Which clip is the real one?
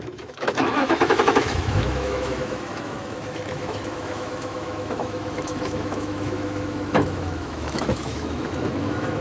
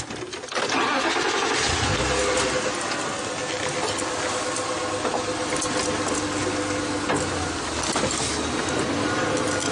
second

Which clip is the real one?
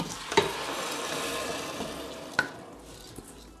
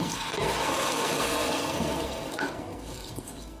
first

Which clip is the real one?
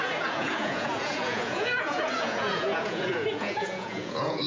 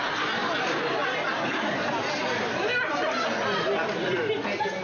second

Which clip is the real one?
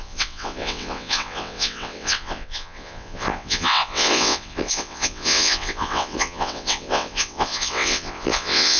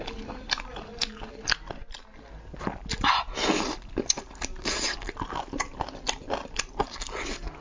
second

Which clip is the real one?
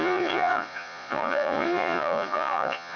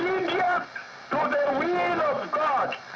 second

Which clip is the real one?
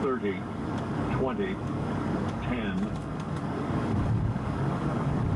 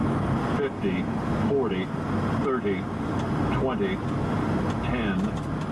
second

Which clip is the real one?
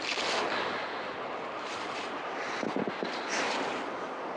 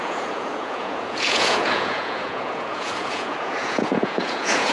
first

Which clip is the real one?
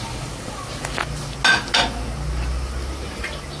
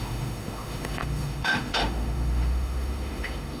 first